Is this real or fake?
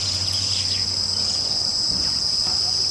fake